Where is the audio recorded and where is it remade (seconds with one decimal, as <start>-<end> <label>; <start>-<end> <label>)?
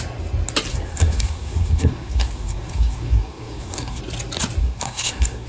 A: 0.0-0.7 recorded; 0.7-4.0 remade; 4.0-4.6 recorded; 4.6-5.5 remade